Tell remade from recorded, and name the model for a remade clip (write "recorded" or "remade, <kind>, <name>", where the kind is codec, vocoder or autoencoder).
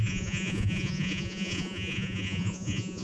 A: remade, vocoder, Vocos